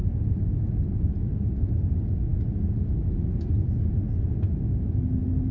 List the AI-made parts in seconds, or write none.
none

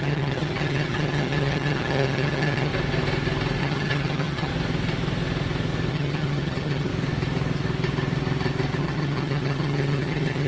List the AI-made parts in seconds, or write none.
0.0-2.7 (vocoder, HiFi-GAN); 3.6-4.5; 5.9-6.9; 8.8-10.5